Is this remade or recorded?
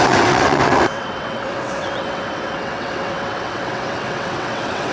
remade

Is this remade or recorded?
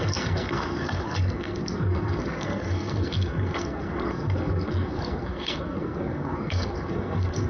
remade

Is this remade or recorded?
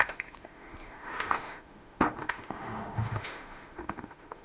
remade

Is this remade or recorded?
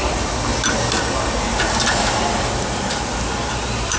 recorded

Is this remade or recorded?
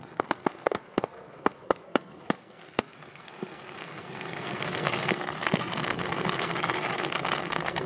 remade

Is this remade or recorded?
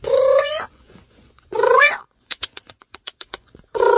remade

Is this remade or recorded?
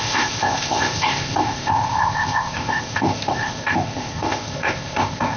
remade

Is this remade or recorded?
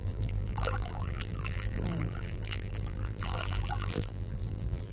remade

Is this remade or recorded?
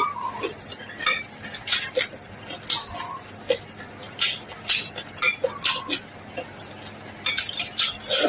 recorded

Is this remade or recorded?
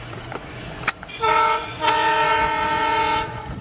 remade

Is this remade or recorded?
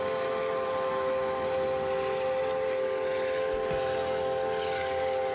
recorded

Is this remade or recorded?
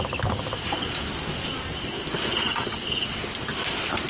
recorded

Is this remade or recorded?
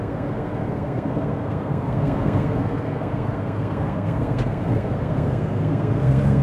remade